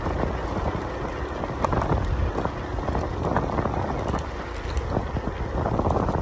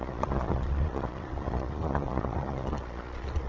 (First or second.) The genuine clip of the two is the first